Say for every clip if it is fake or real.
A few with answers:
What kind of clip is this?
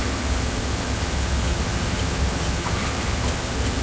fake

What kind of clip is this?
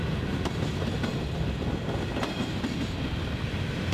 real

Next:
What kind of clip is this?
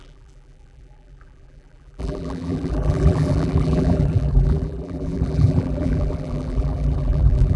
fake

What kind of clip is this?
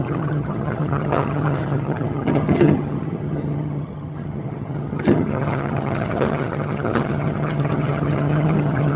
fake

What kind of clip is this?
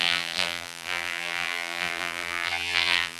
fake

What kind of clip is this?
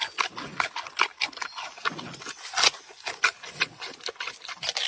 real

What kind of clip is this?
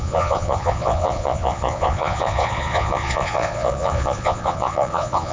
fake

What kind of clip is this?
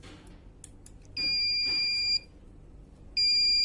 real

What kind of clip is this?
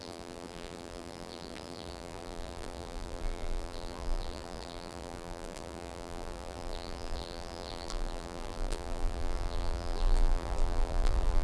fake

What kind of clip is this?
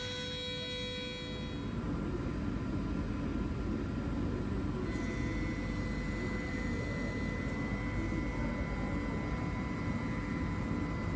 real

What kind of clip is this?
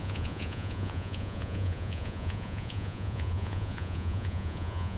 fake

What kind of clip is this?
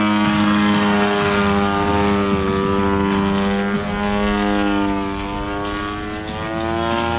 real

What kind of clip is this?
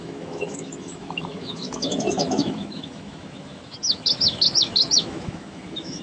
fake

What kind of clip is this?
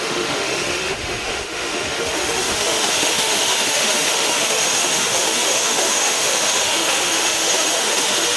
fake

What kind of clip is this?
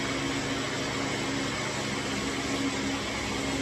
real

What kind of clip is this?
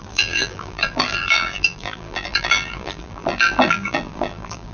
fake